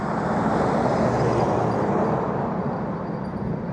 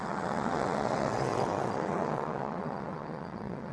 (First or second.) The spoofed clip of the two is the second